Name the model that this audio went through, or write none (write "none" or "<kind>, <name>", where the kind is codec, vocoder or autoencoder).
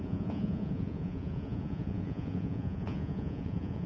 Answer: vocoder, Vocos